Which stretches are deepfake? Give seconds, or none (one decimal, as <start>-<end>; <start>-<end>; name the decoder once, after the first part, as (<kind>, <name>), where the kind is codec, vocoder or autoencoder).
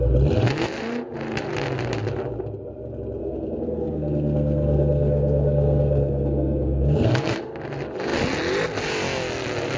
3.2-7.4 (codec, SNAC)